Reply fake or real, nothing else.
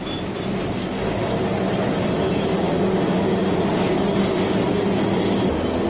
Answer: real